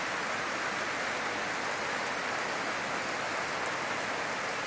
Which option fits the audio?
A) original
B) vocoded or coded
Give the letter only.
A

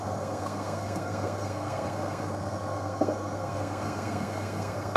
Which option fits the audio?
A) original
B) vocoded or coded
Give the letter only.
B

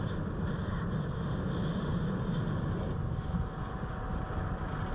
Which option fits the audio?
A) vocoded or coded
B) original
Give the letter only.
B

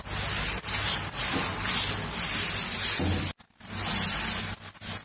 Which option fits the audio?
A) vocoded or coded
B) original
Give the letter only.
B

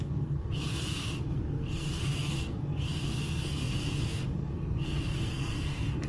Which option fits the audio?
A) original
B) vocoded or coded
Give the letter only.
B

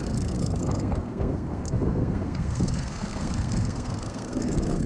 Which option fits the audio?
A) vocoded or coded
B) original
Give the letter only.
A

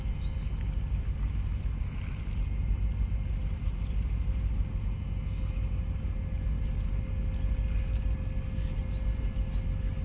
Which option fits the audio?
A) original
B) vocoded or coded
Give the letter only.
A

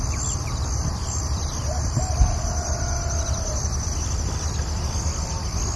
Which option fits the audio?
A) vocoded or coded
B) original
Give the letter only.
B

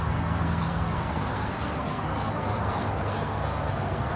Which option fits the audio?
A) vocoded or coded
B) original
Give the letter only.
A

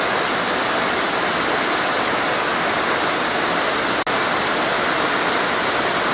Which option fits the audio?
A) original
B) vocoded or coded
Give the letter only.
A